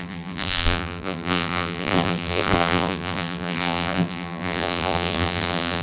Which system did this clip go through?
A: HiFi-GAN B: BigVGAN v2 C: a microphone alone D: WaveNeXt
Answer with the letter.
B